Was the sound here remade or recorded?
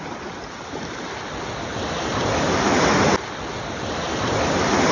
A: recorded